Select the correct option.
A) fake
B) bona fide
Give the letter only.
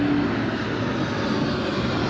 B